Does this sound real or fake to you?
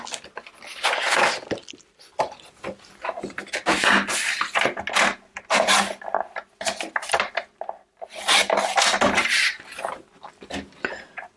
real